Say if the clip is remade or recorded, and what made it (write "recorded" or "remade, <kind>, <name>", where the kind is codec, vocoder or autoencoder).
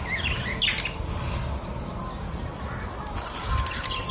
recorded